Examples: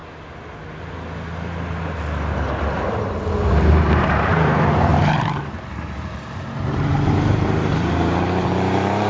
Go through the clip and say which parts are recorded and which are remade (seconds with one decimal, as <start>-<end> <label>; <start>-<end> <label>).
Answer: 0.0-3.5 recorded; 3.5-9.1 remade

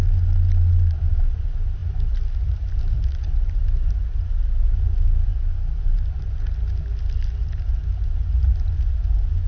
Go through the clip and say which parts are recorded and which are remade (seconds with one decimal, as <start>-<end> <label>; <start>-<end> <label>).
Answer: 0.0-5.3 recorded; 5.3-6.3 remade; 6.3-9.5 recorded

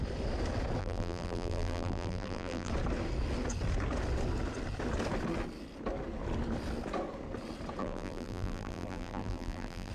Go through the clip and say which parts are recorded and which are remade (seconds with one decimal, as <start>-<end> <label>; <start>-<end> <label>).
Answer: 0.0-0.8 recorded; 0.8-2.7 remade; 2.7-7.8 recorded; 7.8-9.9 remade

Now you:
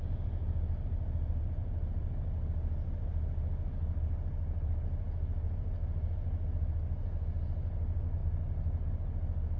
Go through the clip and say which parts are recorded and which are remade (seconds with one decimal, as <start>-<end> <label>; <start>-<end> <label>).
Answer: 0.0-9.6 recorded

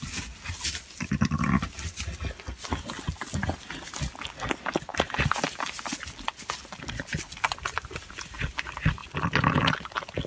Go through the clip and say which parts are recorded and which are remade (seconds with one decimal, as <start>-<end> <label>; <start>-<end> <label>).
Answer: 0.0-10.3 recorded